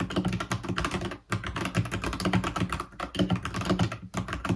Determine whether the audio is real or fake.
real